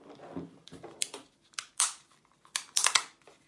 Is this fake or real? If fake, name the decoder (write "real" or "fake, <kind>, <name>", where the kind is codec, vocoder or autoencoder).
real